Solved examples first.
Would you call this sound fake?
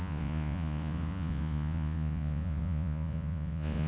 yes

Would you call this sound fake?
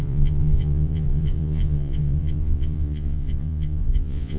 yes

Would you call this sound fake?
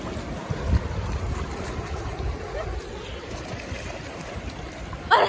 no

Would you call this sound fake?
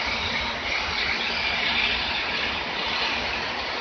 no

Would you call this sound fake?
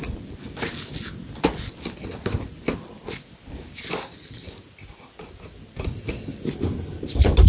no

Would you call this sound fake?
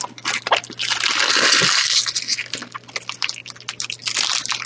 no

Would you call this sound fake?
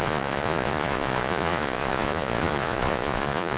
yes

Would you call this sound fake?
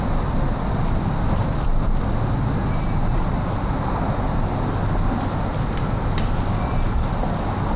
no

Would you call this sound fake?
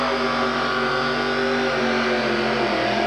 no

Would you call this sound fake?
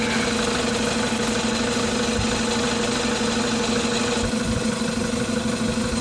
no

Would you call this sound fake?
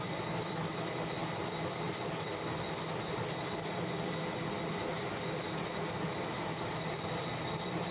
no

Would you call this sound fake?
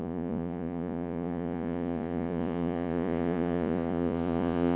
yes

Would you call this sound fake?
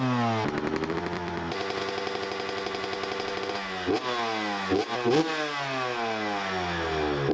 no